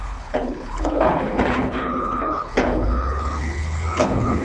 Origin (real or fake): fake